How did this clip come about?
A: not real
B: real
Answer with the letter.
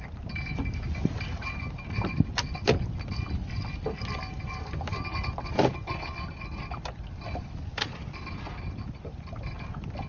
B